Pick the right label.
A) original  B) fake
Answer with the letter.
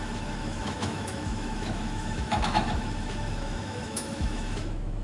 B